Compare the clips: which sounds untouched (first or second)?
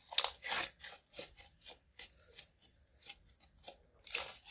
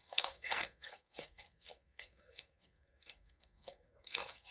first